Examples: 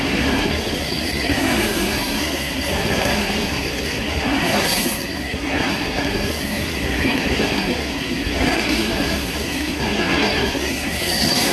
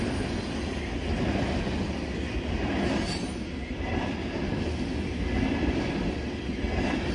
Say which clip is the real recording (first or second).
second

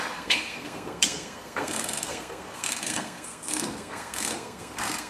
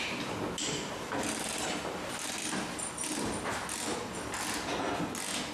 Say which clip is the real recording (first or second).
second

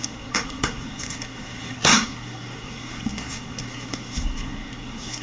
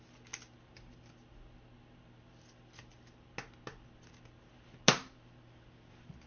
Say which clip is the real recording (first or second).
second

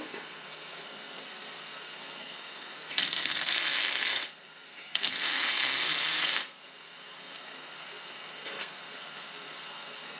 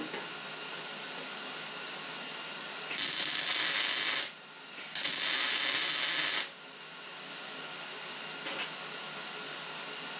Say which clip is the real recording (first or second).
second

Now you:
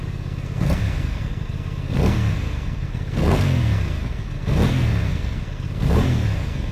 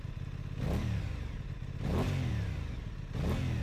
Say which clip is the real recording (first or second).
second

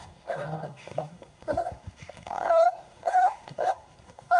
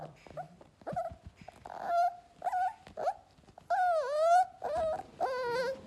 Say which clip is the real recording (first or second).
second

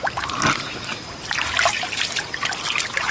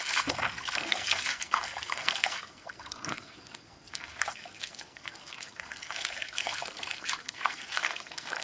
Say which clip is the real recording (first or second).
first